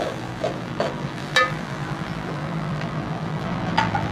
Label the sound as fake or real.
fake